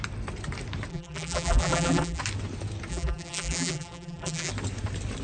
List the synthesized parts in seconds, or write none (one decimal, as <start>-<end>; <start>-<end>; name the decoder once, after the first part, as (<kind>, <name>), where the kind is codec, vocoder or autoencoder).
0.9-2.2 (vocoder, BigVGAN v2); 2.9-4.5